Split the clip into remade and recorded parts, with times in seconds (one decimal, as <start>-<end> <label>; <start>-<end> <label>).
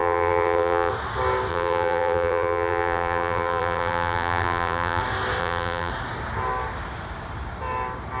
0.0-0.9 remade; 0.9-1.5 recorded; 1.5-5.0 remade; 5.0-5.4 recorded; 5.4-5.9 remade; 5.9-8.2 recorded